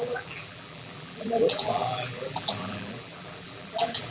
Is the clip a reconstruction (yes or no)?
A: yes